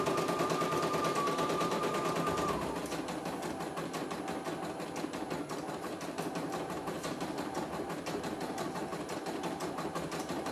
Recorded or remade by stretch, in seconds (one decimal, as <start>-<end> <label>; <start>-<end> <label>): 0.0-1.8 remade; 1.8-5.7 recorded; 5.7-10.5 remade